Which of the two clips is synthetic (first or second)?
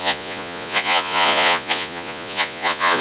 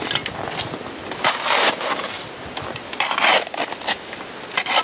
first